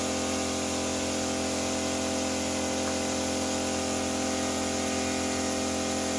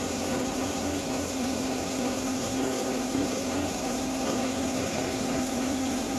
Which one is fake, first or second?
second